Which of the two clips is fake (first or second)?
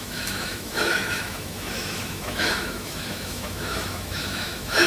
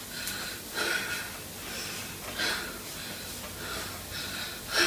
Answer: first